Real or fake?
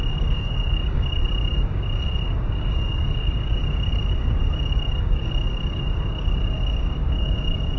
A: fake